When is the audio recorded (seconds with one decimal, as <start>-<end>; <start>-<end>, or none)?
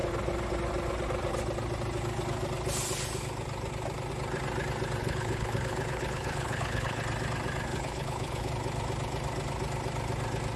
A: 0.0-5.0; 7.0-7.7; 8.5-10.6